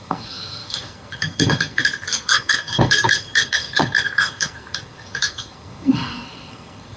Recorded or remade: remade